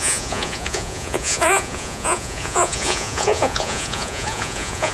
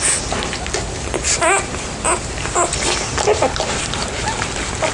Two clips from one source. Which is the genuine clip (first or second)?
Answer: second